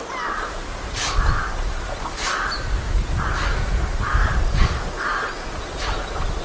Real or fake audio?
real